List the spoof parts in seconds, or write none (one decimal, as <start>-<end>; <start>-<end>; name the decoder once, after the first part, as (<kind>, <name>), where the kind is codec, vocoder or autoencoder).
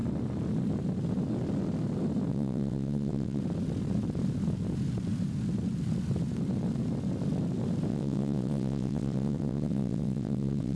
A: 2.3-3.4 (vocoder, WaveNeXt); 7.9-10.8